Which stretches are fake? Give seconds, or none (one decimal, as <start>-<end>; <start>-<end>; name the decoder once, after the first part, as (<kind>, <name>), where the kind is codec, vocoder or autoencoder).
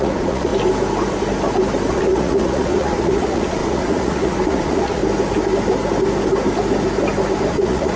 0.0-0.5 (vocoder, Vocos); 1.9-5.0; 7.5-8.0